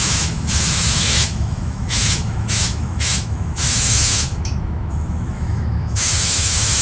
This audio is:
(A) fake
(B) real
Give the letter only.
A